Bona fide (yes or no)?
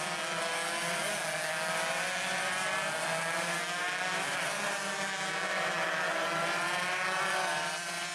yes